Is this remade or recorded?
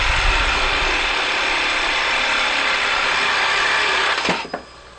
recorded